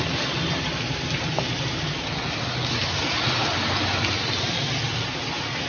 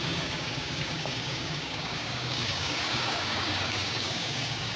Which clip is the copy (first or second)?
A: second